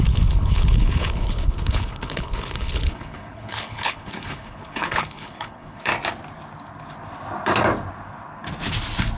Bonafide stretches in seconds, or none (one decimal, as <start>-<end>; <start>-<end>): 5.9-9.2